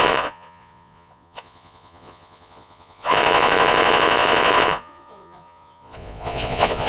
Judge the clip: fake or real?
fake